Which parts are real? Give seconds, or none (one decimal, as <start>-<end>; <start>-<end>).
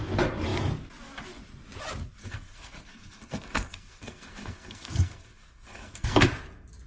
0.0-2.2; 6.3-6.9